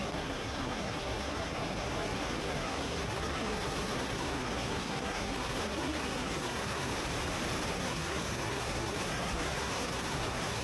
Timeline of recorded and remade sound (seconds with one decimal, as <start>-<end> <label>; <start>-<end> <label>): 0.0-6.9 remade; 6.9-7.7 recorded; 7.7-10.6 remade